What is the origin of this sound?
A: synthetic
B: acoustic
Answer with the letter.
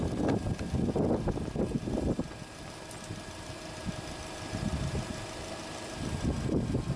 B